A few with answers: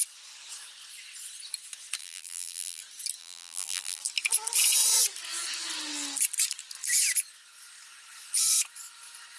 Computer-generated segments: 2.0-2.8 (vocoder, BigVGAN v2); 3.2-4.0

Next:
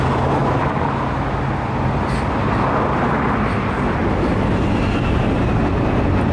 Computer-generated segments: 4.0-5.6 (vocoder, BigVGAN v2)

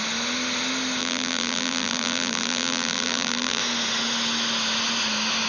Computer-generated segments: 1.0-3.6 (vocoder, BigVGAN v2)

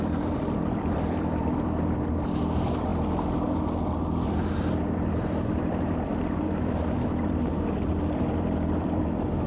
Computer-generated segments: 0.0-9.5 (vocoder, BigVGAN v2)